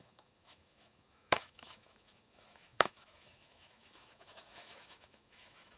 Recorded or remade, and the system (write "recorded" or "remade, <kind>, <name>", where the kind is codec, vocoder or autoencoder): remade, autoencoder, DAC-VAE